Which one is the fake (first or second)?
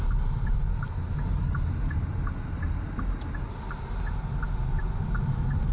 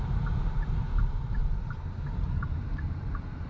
second